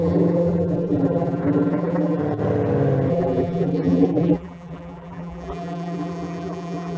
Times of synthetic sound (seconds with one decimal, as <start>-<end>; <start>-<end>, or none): 0.0-2.2; 3.1-7.0